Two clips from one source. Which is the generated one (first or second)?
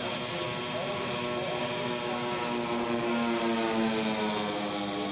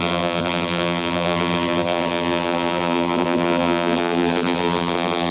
second